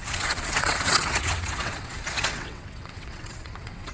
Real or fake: fake